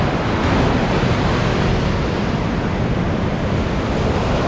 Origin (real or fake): real